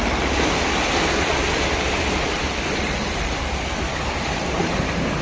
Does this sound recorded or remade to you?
recorded